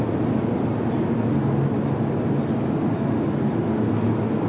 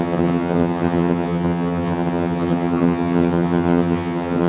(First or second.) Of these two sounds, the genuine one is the first